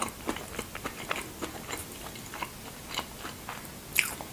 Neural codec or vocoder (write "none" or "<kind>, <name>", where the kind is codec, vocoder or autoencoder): none